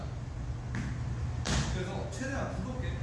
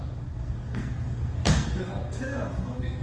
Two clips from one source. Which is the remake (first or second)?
second